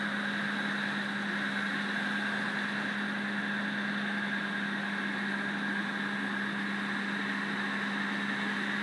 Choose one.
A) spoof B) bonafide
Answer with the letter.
B